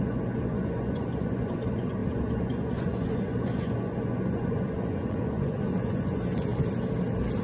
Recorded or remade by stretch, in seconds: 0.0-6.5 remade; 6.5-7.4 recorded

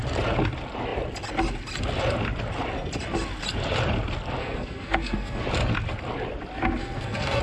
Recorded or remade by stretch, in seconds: 0.0-4.4 recorded; 4.4-5.4 remade; 5.4-6.8 recorded; 6.8-7.4 remade